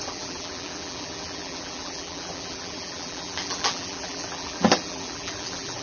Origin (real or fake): fake